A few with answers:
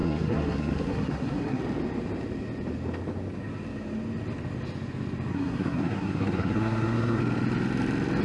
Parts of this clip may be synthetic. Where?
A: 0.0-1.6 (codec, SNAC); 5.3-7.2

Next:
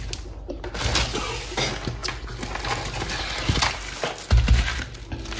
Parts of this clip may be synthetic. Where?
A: none

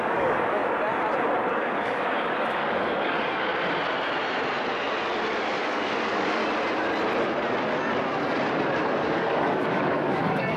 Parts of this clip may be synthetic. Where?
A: 0.0-0.6 (codec, DAC); 1.5-3.5; 5.6-6.4; 8.8-10.6

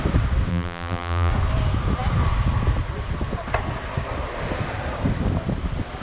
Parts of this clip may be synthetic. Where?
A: 0.5-1.3 (vocoder, BigVGAN v2)

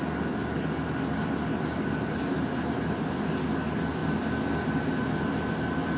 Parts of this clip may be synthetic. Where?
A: none

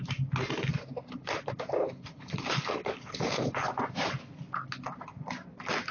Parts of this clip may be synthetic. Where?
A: 1.8-3.7 (codec, HILCodec)